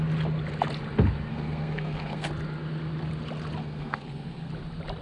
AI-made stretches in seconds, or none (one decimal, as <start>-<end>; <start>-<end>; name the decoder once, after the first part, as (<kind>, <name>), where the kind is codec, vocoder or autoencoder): 1.3-2.3 (codec, SNAC); 3.6-4.5